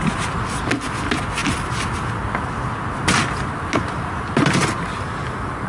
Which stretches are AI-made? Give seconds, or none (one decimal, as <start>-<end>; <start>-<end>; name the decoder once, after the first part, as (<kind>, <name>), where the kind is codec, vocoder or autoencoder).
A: none